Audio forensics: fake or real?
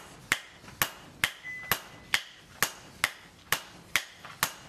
real